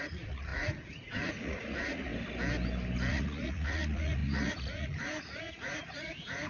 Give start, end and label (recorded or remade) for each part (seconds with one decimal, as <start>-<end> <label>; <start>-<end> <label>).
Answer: 0.0-2.1 remade; 2.1-3.1 recorded; 3.1-6.5 remade